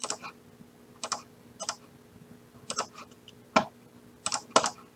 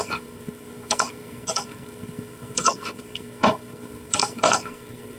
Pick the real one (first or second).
first